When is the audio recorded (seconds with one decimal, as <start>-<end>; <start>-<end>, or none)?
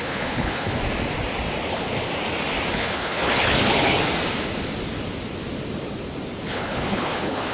0.8-1.7; 2.1-2.7; 4.0-6.5